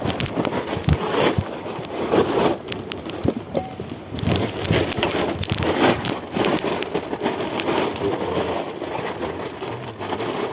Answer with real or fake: real